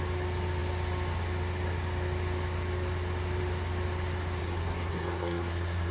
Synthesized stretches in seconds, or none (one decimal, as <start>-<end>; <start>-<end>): 4.4-5.9